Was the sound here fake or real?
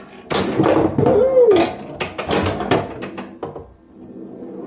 real